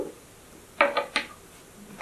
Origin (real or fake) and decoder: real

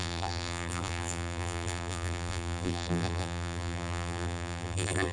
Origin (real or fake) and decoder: fake, vocoder, BigVGAN v2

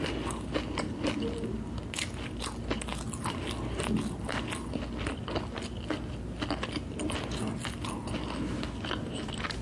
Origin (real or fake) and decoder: real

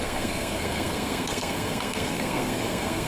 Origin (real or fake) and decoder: fake, codec, SNAC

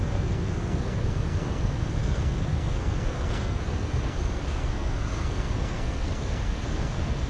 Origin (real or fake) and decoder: fake, codec, SNAC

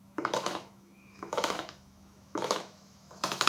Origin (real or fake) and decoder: fake, autoencoder, DAC-VAE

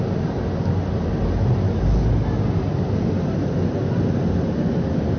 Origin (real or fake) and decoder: real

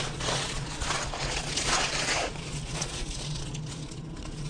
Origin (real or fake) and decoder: fake, vocoder, Vocos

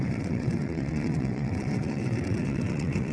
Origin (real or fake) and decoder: fake, vocoder, WaveNeXt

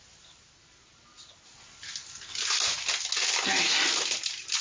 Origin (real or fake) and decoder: real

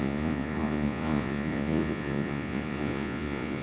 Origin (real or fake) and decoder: fake, vocoder, Vocos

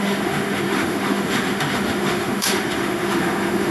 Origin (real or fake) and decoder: fake, autoencoder, DAC-VAE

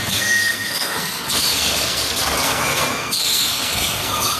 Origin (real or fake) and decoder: fake, codec, SNAC